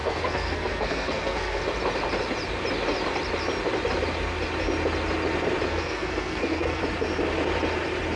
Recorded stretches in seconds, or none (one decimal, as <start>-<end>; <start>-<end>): 1.6-5.7; 6.8-8.2